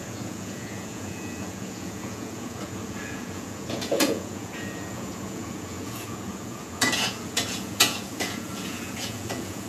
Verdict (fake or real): fake